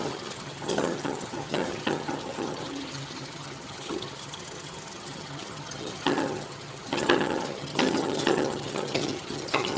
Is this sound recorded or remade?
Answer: remade